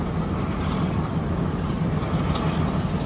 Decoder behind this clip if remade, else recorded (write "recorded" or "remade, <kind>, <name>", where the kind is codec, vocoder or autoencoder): recorded